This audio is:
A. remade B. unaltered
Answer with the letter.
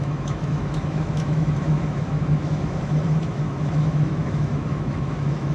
A